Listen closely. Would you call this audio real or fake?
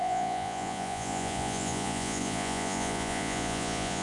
fake